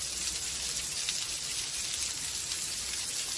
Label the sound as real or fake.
real